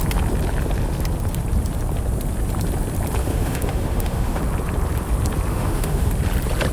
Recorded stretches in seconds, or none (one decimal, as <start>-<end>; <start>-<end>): 0.0-3.2; 4.4-5.5; 6.1-6.7